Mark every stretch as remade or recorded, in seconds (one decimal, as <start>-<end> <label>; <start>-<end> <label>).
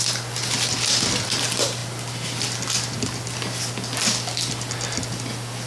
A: 0.0-5.7 recorded